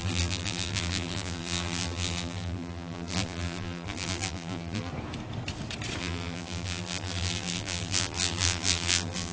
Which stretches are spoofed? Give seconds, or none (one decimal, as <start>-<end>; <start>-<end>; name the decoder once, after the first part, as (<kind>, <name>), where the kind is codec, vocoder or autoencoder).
0.0-4.9 (vocoder, BigVGAN v2); 6.0-9.3

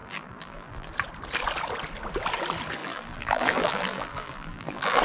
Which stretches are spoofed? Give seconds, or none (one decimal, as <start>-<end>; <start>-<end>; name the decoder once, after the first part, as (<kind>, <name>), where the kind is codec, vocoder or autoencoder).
0.0-0.9 (vocoder, BigVGAN v2); 2.8-5.0

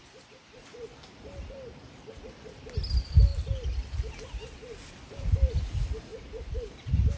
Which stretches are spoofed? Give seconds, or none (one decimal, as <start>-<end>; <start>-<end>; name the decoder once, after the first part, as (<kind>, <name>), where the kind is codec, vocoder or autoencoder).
0.0-3.3 (vocoder, BigVGAN v2); 4.9-6.1

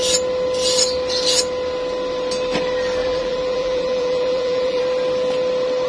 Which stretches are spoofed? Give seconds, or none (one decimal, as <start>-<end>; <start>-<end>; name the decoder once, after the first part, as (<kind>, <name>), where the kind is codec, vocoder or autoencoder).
3.0-4.8 (vocoder, BigVGAN v2)

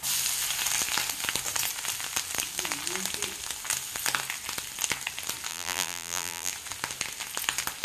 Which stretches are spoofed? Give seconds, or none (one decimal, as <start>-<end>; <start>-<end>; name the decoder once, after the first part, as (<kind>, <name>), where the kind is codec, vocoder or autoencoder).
5.5-6.5 (vocoder, BigVGAN v2)

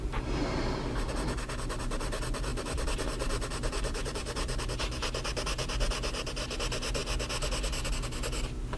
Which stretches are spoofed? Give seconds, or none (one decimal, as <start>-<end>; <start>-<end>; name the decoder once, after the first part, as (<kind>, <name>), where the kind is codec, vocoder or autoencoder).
2.5-4.6 (vocoder, BigVGAN v2)